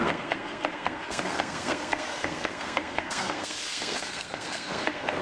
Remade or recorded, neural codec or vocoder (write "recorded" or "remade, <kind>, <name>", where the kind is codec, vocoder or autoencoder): remade, codec, SNAC